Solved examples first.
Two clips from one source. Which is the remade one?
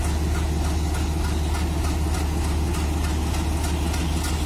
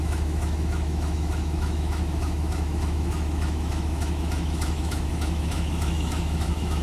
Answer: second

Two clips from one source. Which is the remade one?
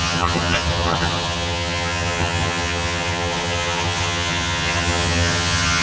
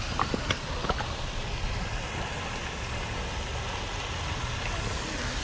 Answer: first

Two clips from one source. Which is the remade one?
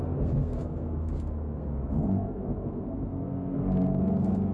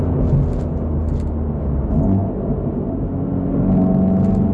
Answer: first